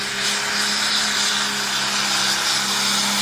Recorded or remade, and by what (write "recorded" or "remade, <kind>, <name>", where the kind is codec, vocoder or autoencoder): recorded